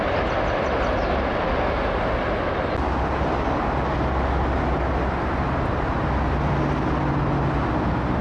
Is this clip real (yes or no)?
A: yes